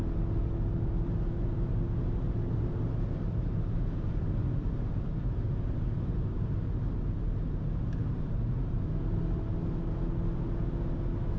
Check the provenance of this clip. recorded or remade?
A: recorded